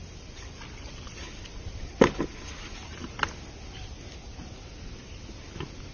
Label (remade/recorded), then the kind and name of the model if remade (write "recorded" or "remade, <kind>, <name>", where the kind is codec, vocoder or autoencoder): recorded